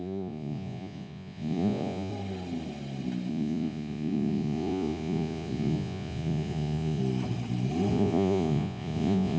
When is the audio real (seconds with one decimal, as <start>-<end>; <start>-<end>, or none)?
2.1-3.3; 7.0-7.9